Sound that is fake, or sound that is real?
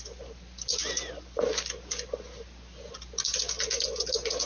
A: real